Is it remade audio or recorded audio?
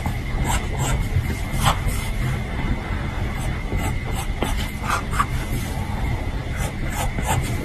recorded